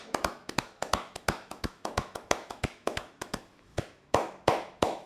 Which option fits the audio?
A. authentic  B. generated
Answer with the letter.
B